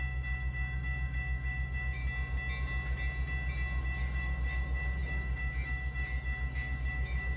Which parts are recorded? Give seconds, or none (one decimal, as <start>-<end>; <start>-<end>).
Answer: 2.0-3.8